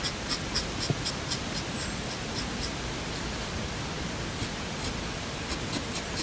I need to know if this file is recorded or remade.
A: recorded